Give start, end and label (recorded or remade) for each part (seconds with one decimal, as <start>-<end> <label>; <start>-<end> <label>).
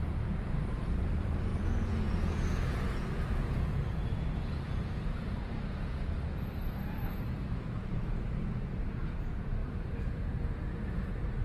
0.0-11.4 remade